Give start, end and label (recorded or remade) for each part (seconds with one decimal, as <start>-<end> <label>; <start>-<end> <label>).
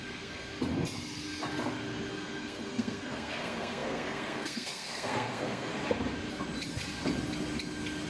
0.0-0.5 remade; 0.5-2.1 recorded; 2.1-5.7 remade; 5.7-8.1 recorded